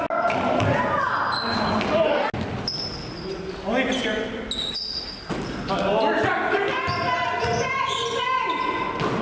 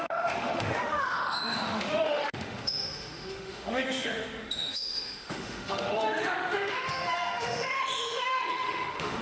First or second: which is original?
first